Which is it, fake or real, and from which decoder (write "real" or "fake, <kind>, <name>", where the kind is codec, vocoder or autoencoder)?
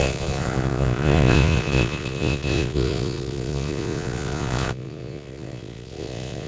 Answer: fake, vocoder, Vocos